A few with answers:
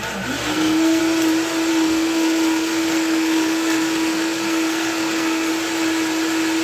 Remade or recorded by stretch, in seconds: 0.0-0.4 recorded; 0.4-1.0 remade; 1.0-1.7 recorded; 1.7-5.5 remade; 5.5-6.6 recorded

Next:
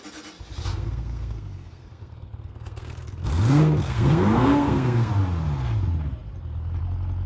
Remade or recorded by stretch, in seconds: 0.0-0.7 recorded; 0.7-5.1 remade; 5.1-7.3 recorded

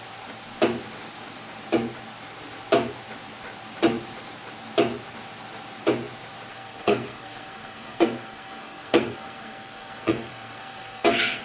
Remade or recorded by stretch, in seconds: 0.0-6.5 recorded; 6.5-11.4 remade

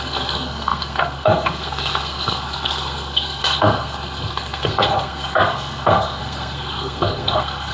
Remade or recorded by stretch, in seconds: 0.0-7.7 remade